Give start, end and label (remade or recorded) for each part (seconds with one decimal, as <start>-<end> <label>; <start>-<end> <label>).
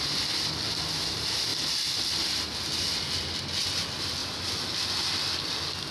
0.0-5.9 recorded